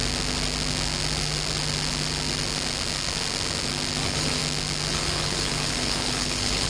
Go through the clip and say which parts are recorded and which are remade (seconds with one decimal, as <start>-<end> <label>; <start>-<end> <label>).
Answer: 0.0-4.0 recorded; 4.0-4.4 remade; 4.4-4.9 recorded; 4.9-6.7 remade